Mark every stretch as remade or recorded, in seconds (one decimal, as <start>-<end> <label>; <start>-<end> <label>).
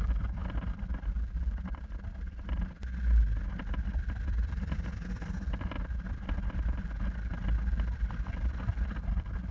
0.0-9.5 recorded